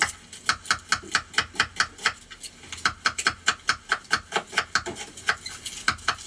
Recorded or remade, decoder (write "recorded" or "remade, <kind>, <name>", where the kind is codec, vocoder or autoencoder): recorded